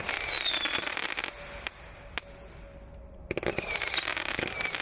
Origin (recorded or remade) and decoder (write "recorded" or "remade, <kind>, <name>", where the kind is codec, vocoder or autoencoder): recorded